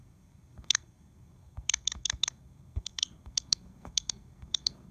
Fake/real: fake